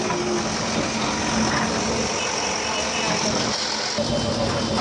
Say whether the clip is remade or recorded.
recorded